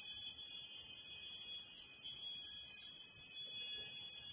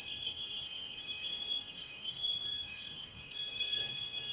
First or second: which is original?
first